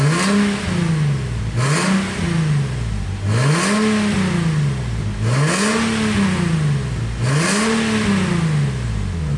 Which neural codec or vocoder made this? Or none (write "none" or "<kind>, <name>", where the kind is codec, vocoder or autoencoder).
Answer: none